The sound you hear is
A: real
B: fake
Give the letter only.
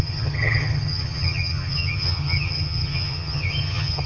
B